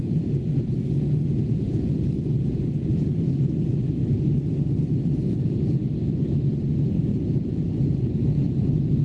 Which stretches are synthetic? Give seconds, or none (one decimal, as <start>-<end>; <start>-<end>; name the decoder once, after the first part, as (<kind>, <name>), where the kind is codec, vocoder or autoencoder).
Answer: 0.0-4.0 (vocoder, Vocos); 5.3-5.8; 7.3-9.0